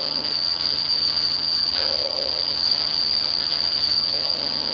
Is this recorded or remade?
remade